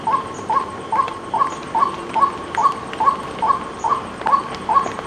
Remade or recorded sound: recorded